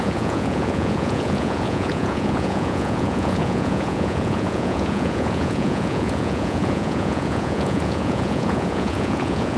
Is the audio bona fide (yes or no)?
no